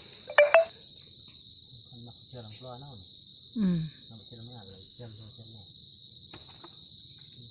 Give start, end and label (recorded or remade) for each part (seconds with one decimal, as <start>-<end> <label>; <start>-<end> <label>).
0.0-4.7 recorded; 4.7-5.3 remade; 5.3-7.5 recorded